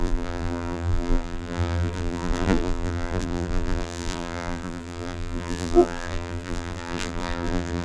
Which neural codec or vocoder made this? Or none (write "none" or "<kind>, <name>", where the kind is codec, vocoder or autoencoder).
vocoder, BigVGAN v2